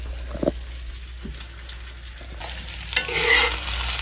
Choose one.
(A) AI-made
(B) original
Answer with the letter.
B